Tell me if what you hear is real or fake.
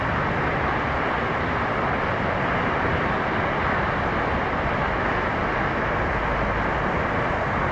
real